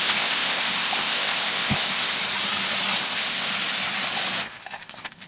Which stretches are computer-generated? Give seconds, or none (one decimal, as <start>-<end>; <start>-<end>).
0.0-2.2; 3.0-3.5; 4.4-5.3